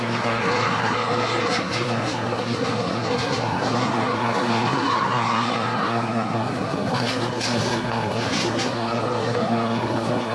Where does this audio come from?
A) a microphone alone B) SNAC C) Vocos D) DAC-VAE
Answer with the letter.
B